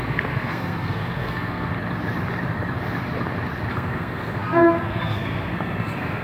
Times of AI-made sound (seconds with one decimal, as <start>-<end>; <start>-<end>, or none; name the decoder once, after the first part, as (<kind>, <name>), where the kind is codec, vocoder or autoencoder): 0.0-1.7 (codec, SNAC); 3.7-6.2